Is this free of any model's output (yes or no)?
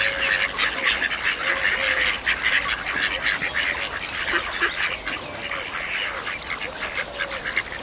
yes